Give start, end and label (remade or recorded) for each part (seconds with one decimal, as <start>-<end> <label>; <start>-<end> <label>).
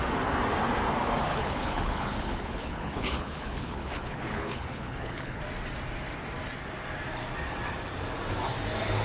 0.0-1.3 recorded; 1.3-5.4 remade; 5.4-9.0 recorded